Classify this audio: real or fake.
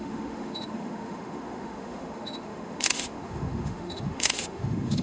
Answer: fake